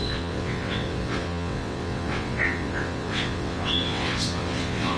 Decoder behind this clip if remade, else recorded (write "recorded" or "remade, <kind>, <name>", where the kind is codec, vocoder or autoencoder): remade, vocoder, WaveNeXt